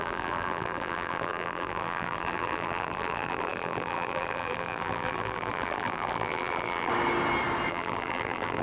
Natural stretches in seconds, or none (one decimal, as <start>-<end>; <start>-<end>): 6.9-7.7